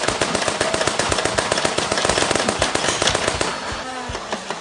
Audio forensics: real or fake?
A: real